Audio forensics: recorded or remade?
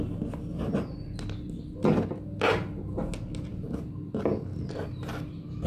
recorded